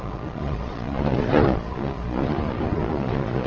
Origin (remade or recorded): remade